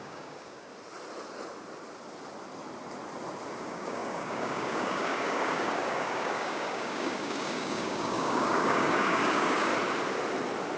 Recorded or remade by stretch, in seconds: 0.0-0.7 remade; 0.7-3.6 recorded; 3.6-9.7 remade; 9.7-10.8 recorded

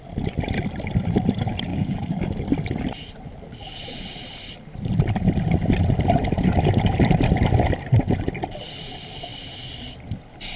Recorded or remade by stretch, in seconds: 0.0-1.7 recorded; 1.7-2.3 remade; 2.3-10.6 recorded

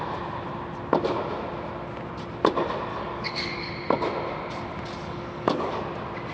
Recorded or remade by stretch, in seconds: 0.0-2.9 recorded; 2.9-3.7 remade; 3.7-5.0 recorded; 5.0-5.8 remade; 5.8-6.3 recorded

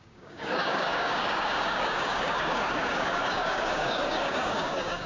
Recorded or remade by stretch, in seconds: 0.0-5.1 remade

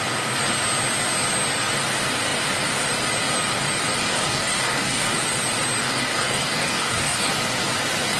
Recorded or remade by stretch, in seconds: 0.0-4.0 recorded; 4.0-5.2 remade; 5.2-5.8 recorded; 5.8-7.3 remade; 7.3-8.2 recorded

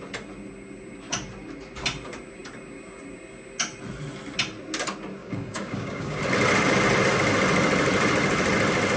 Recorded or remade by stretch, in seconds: 0.0-5.2 recorded; 5.2-6.2 remade; 6.2-9.0 recorded

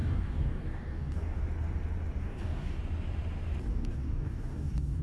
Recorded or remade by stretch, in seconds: 0.0-1.4 remade; 1.4-2.2 recorded; 2.2-2.8 remade; 2.8-3.7 recorded; 3.7-5.0 remade

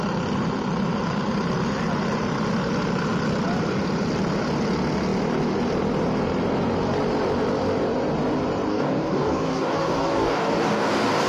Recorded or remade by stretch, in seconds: 0.0-8.7 recorded; 8.7-11.3 remade